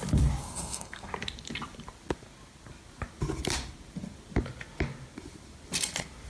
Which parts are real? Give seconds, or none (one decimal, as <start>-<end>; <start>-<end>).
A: 0.0-0.4; 1.1-6.3